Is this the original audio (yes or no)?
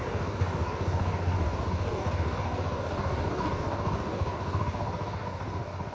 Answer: no